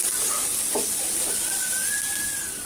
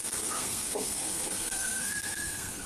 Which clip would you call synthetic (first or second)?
second